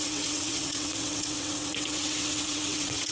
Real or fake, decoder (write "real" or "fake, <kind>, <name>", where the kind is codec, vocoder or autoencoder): fake, vocoder, WaveNeXt